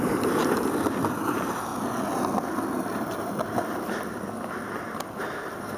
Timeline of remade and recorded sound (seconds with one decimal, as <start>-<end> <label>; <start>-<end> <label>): 0.0-0.4 remade; 0.4-1.2 recorded; 1.2-1.7 remade; 1.7-5.2 recorded; 5.2-5.8 remade